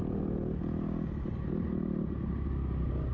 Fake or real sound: real